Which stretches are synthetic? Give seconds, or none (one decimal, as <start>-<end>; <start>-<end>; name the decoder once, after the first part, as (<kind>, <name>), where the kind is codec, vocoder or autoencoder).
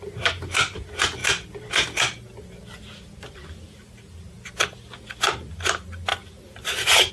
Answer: 6.1-7.1 (vocoder, BigVGAN v2)